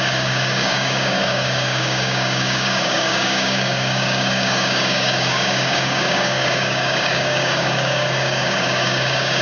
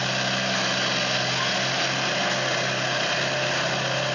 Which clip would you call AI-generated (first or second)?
first